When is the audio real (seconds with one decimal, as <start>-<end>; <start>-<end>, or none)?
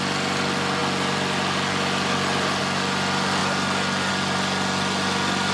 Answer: 0.0-5.5